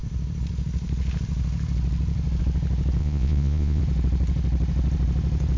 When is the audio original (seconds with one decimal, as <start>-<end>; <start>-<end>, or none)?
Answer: 0.0-3.0; 3.8-5.6